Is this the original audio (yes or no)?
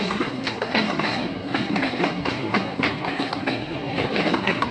no